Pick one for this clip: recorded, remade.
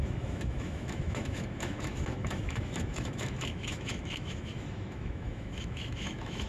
remade